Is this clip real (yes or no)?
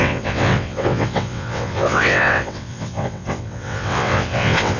no